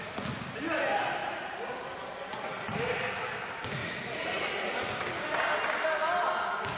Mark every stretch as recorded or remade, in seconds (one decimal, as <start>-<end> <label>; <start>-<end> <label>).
0.0-1.2 recorded; 1.2-1.8 remade; 1.8-3.8 recorded; 3.8-4.9 remade; 4.9-6.8 recorded